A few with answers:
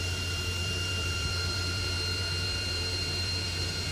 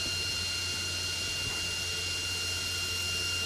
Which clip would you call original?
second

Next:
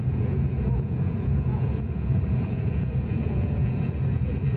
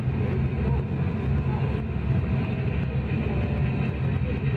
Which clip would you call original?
second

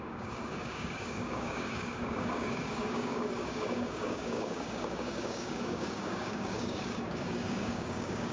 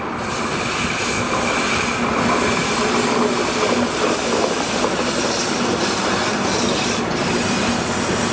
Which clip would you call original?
second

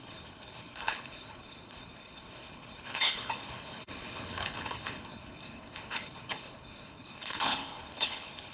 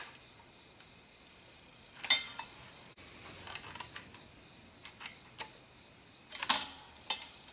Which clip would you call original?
second